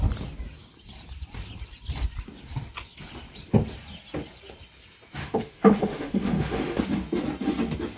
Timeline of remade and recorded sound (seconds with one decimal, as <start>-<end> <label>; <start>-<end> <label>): 0.0-5.2 recorded; 5.2-6.8 remade; 6.8-8.0 recorded